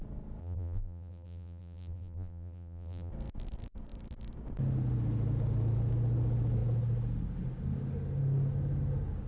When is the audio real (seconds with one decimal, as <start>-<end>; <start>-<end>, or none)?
0.0-0.4; 3.1-9.3